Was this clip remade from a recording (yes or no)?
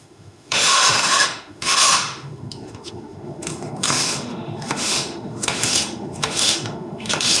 yes